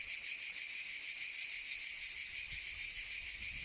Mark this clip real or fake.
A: real